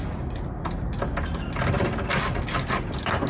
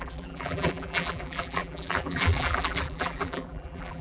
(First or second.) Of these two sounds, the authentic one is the first